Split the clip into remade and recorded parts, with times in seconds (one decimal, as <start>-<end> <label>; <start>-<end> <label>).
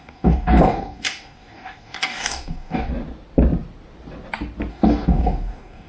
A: 0.0-2.9 remade; 2.9-4.7 recorded; 4.7-5.9 remade